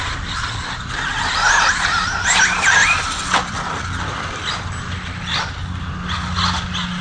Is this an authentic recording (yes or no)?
yes